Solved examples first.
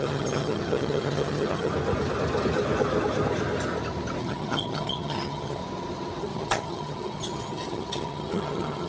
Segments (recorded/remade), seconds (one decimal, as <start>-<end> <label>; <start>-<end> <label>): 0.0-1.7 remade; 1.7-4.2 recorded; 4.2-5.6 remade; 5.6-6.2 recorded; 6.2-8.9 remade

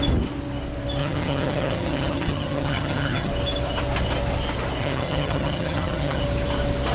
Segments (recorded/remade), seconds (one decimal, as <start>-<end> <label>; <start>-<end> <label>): 0.0-1.0 recorded; 1.0-3.3 remade; 3.3-4.8 recorded; 4.8-6.2 remade; 6.2-6.9 recorded

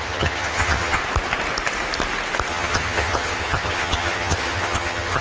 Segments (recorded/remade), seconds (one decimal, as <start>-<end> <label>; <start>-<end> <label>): 0.0-1.0 remade; 1.0-2.5 recorded; 2.5-5.2 remade

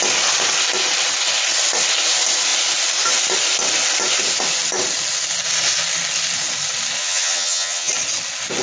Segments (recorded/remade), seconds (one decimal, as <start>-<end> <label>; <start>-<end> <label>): 0.0-7.0 recorded; 7.0-7.9 remade; 7.9-8.6 recorded

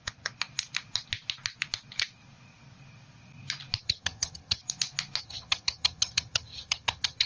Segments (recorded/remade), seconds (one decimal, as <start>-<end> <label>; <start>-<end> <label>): 0.0-3.8 recorded; 3.8-4.6 remade; 4.6-5.2 recorded; 5.2-7.3 remade

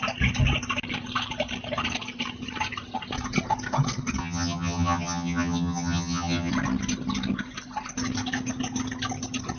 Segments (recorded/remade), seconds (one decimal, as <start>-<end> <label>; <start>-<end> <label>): 0.0-4.2 recorded; 4.2-6.5 remade; 6.5-9.6 recorded

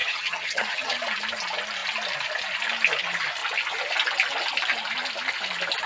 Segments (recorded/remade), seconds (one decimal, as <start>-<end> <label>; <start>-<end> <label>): 0.0-1.0 remade; 1.0-5.9 recorded

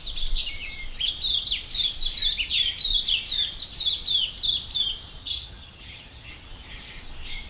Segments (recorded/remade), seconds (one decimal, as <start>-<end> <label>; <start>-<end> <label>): 0.0-5.2 recorded; 5.2-6.3 remade; 6.3-7.5 recorded